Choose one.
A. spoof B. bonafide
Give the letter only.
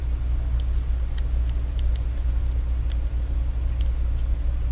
B